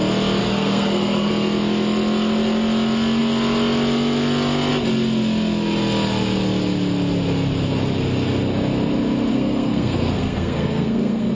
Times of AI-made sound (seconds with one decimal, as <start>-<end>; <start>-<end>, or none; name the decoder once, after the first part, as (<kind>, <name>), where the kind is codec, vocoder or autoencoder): 0.4-1.3 (codec, SNAC); 9.3-11.3